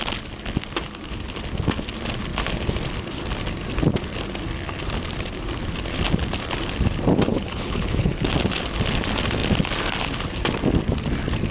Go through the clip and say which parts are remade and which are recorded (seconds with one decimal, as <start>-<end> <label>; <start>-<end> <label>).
0.0-7.3 recorded; 7.3-8.3 remade; 8.3-11.5 recorded